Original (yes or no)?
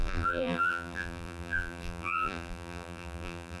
no